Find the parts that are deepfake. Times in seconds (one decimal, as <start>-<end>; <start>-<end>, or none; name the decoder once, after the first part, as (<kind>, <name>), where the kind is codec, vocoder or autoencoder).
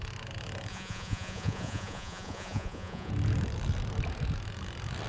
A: 0.7-3.1 (vocoder, Vocos)